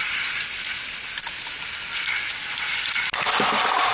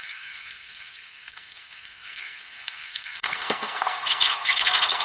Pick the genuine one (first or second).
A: first